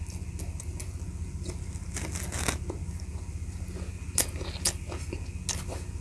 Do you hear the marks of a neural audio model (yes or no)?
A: no